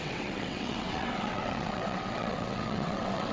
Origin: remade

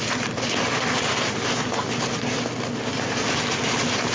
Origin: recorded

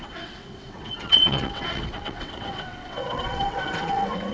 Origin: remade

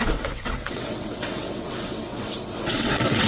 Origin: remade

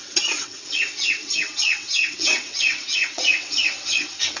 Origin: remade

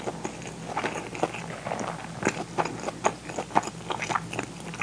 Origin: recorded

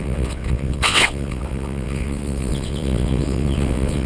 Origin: remade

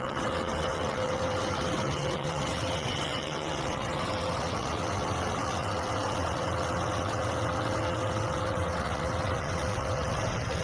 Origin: remade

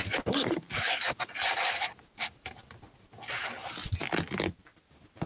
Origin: recorded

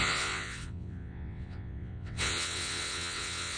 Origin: remade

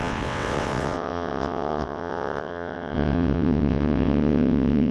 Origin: remade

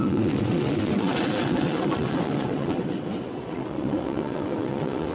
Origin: remade